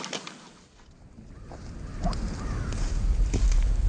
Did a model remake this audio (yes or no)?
no